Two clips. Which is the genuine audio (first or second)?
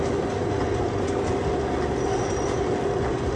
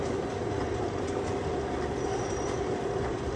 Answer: first